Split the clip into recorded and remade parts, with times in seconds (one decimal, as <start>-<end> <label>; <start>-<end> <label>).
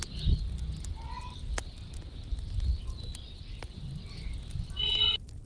0.0-5.5 recorded